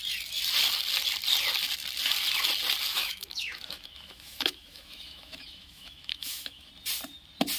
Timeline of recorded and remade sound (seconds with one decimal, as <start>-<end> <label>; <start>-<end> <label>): 0.0-2.9 recorded; 2.9-6.7 remade; 6.7-7.6 recorded